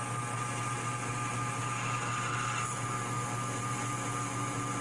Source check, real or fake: real